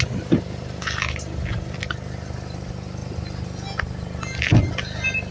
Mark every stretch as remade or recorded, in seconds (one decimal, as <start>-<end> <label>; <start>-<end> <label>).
0.0-5.3 recorded